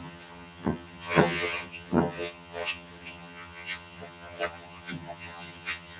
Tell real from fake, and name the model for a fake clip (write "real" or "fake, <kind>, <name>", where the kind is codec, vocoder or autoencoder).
fake, vocoder, HiFi-GAN